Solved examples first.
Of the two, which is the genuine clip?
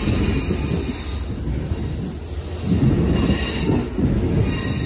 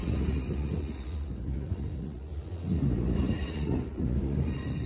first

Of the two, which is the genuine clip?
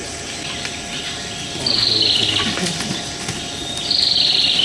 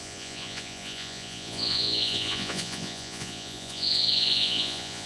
first